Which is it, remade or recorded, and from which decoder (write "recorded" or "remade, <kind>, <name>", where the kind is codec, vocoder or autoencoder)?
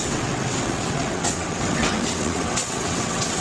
remade, vocoder, WaveNeXt